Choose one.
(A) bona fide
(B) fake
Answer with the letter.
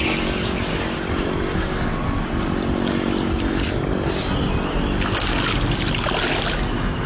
A